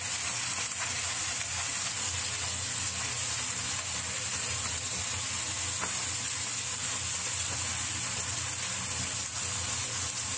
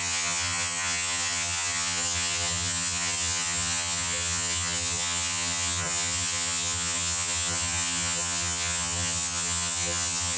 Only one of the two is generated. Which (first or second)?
second